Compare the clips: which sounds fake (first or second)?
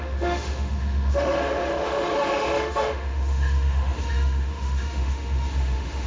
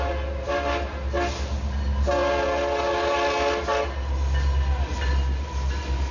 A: first